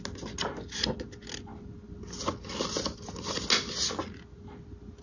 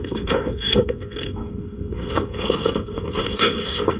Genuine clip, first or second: first